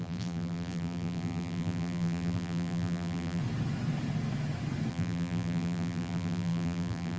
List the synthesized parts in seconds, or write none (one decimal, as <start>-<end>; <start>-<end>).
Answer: 0.0-3.4; 4.9-7.2